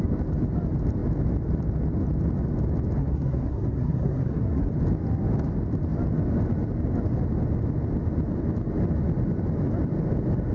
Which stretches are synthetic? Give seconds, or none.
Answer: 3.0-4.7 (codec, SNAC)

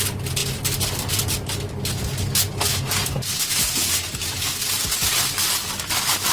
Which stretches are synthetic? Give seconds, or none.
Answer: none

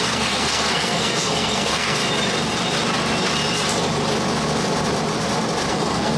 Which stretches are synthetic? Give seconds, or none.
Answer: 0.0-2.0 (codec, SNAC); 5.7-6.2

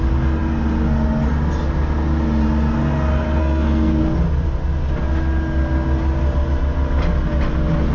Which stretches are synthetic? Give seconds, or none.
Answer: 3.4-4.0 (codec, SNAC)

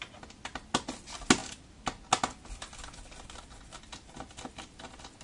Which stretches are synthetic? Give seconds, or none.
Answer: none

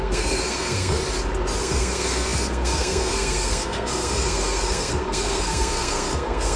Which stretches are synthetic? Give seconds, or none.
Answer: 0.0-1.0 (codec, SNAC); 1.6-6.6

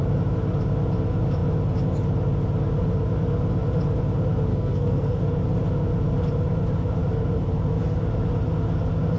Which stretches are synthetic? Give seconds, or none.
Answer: 4.5-5.2 (codec, SNAC)